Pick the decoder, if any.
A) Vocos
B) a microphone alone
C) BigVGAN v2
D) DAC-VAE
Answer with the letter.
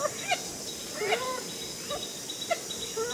B